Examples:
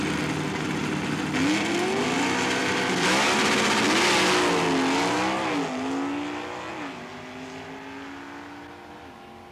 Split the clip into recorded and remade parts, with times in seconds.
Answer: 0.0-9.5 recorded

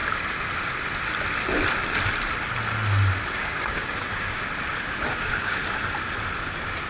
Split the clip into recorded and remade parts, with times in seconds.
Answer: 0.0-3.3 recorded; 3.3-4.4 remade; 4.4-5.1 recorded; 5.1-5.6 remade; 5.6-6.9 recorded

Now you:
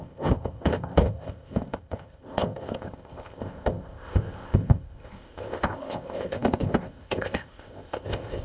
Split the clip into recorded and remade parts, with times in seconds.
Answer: 0.0-8.4 remade

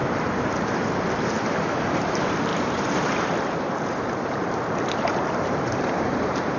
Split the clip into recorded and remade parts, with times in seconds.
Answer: 0.0-1.1 recorded; 1.1-6.6 remade

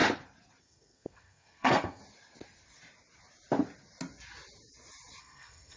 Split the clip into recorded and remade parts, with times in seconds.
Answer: 0.0-0.6 recorded; 0.6-2.0 remade; 2.0-5.2 recorded; 5.2-5.8 remade

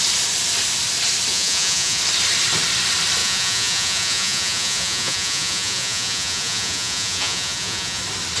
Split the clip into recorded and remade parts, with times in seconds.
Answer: 0.0-1.3 recorded; 1.3-2.0 remade; 2.0-3.2 recorded; 3.2-8.0 remade; 8.0-8.4 recorded

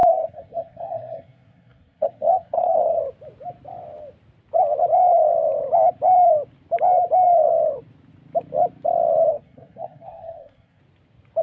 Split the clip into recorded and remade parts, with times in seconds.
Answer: 0.0-3.0 remade; 3.0-9.3 recorded; 9.3-10.8 remade; 10.8-11.4 recorded

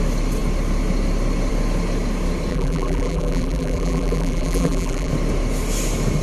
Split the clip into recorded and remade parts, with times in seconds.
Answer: 0.0-2.5 recorded; 2.5-5.1 remade; 5.1-6.2 recorded